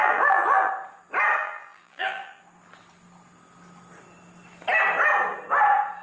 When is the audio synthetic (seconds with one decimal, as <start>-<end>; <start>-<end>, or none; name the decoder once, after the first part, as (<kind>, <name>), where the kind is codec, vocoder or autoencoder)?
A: 0.0-0.7 (vocoder, BigVGAN v2); 1.4-2.4